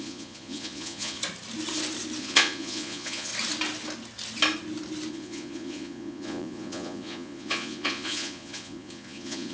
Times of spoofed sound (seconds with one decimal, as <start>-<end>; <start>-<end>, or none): 0.0-1.2; 2.2-3.3; 5.1-9.5

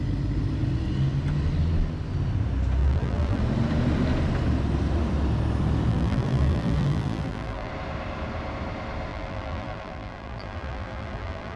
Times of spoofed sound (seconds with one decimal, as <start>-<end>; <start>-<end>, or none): 2.8-3.4; 5.9-7.7; 9.1-11.6

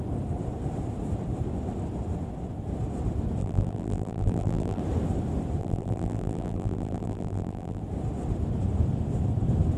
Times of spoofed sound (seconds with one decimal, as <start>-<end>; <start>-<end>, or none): 3.4-4.8; 5.6-7.8

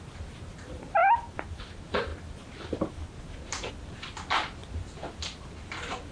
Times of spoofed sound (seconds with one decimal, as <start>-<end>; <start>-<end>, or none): none

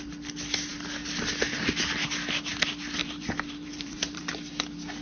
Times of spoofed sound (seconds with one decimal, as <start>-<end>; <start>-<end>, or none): 3.0-4.5